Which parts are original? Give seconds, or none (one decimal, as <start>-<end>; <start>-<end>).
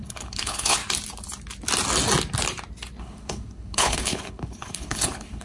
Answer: 0.8-3.0